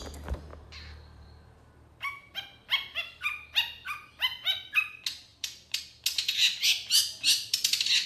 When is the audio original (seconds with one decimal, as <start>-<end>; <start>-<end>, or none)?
0.0-0.5; 2.3-5.3; 5.8-8.1